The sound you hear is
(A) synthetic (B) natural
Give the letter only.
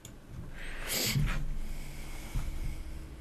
B